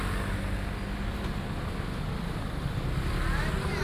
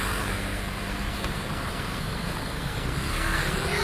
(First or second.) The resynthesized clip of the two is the second